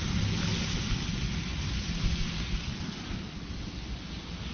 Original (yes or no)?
yes